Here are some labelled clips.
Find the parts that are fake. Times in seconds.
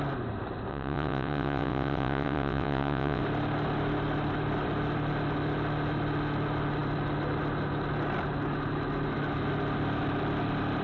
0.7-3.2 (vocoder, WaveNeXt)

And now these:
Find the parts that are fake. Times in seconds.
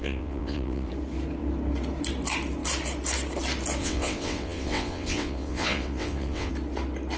0.0-0.9 (vocoder, WaveNeXt); 3.8-6.5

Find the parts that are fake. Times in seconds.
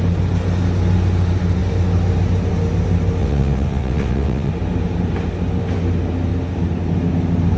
3.2-4.5 (vocoder, WaveNeXt)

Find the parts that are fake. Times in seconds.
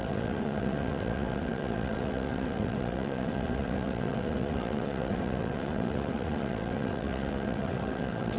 0.0-8.4 (vocoder, WaveNeXt)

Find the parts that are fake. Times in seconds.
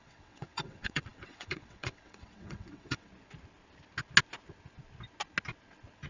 0.0-3.1 (vocoder, WaveNeXt)